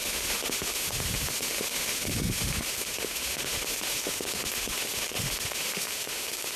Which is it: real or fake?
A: fake